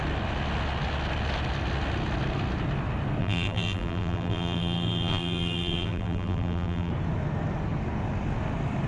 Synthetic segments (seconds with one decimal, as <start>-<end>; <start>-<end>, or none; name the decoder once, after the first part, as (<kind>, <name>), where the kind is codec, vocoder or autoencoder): 3.2-6.9 (vocoder, BigVGAN v2)